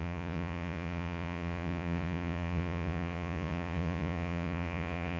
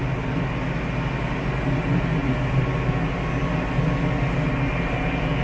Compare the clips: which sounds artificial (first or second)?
first